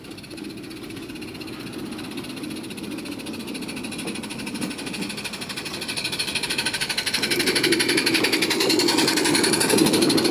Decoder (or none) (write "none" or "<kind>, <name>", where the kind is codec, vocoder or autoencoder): none